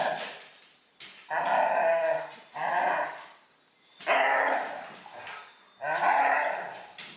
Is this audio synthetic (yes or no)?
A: no